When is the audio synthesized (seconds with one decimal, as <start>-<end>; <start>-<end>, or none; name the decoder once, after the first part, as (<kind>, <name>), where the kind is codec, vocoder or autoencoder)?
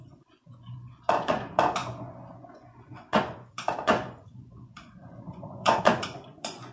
0.0-6.7 (vocoder, Vocos)